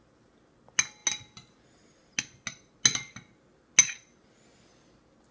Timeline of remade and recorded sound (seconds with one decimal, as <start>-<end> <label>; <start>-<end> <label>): 0.0-5.3 recorded